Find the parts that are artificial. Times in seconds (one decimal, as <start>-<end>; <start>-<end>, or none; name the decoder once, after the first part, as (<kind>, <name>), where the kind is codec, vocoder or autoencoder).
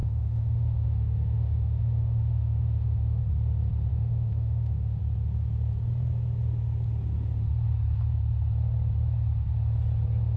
0.0-3.2 (autoencoder, DAC-VAE); 3.9-5.0